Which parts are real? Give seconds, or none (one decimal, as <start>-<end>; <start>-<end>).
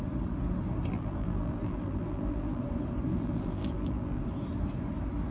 0.0-0.9; 2.6-3.1; 4.2-5.3